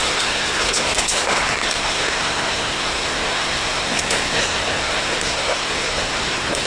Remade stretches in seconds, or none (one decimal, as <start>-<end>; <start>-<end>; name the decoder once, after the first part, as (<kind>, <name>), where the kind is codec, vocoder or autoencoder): 0.0-6.7 (codec, SNAC)